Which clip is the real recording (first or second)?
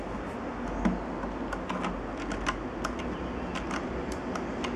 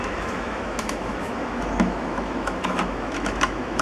first